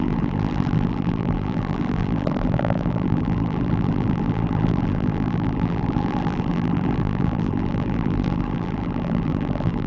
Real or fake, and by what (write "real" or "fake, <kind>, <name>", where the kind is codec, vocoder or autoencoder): fake, vocoder, BigVGAN v2